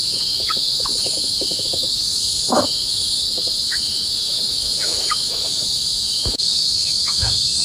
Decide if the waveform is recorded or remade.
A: remade